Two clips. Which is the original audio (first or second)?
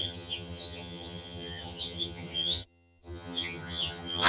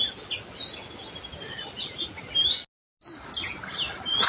second